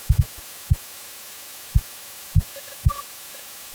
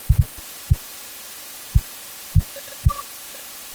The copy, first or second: first